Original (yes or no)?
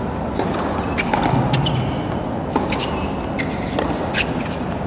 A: yes